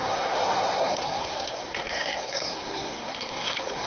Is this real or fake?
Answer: fake